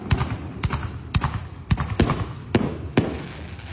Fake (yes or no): no